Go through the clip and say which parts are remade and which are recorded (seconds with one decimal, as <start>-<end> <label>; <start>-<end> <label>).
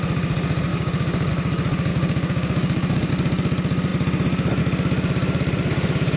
0.0-0.7 recorded; 0.7-1.3 remade; 1.3-1.9 recorded; 1.9-3.1 remade; 3.1-6.2 recorded